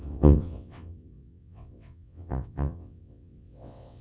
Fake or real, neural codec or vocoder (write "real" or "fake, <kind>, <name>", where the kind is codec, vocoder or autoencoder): fake, vocoder, WaveNeXt